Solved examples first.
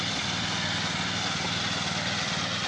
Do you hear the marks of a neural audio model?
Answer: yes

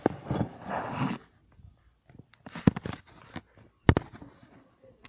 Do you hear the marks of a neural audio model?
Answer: no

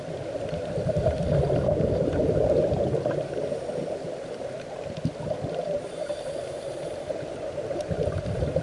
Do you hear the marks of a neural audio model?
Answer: yes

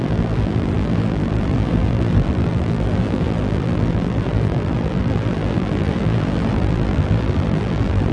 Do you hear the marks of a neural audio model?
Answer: yes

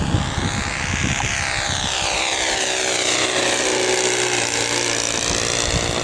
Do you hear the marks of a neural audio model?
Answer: no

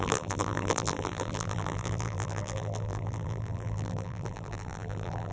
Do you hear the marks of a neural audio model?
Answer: yes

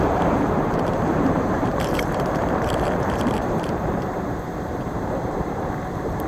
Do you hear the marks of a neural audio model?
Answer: yes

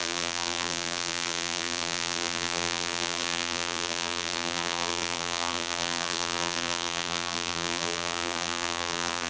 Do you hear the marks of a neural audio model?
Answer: yes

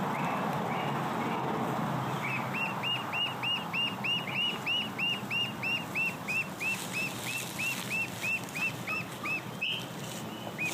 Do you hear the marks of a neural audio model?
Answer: no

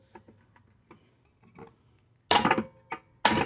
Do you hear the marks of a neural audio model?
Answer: no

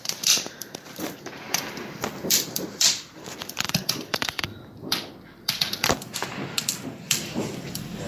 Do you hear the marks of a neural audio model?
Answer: yes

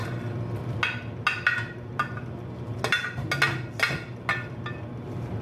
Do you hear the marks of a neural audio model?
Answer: no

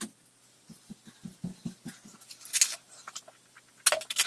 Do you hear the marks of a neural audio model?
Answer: no